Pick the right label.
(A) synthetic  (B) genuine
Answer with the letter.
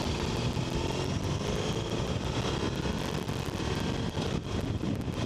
B